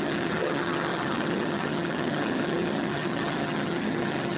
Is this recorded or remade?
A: remade